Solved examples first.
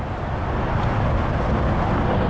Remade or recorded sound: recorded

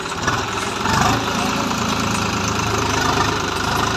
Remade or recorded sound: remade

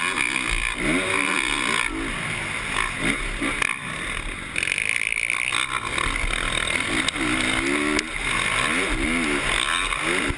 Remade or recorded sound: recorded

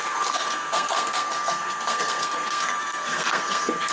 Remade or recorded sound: remade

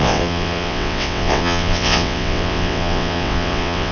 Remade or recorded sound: remade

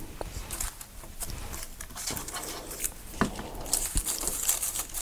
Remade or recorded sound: recorded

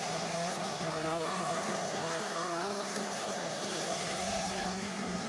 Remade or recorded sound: remade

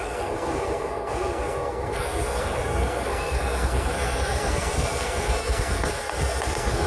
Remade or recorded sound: remade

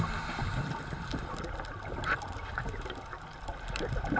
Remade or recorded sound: recorded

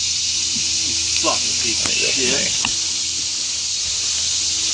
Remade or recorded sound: recorded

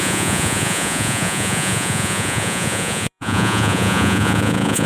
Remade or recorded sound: remade